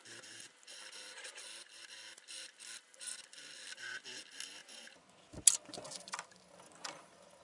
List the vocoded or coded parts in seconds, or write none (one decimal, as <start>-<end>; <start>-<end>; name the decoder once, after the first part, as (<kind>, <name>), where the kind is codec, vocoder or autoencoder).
none